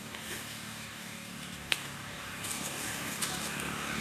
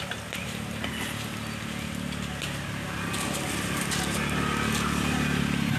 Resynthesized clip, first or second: first